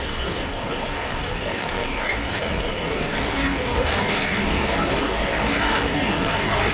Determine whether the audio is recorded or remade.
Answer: remade